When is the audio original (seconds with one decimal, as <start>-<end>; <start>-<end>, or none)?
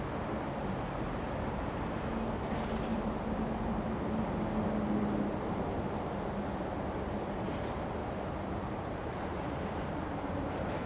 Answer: 0.0-2.9; 4.2-8.0